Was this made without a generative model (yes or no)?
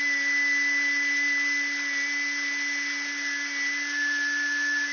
yes